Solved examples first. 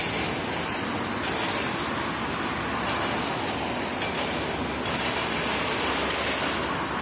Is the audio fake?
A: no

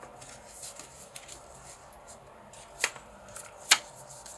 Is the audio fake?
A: no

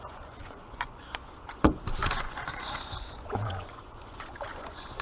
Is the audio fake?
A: yes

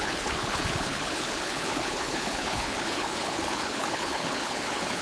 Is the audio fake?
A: yes